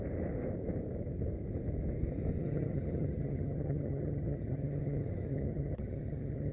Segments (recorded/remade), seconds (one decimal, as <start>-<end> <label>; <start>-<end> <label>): 0.0-2.4 recorded; 2.4-6.5 remade